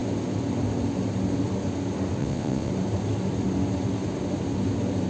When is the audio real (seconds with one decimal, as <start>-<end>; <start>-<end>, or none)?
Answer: 0.0-2.2; 2.7-5.1